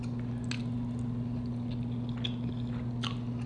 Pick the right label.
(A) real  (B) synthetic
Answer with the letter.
A